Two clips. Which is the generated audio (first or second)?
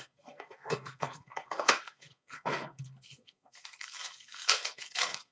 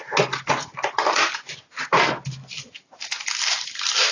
first